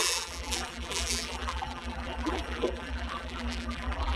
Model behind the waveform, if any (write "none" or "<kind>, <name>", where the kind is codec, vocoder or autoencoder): vocoder, BigVGAN v2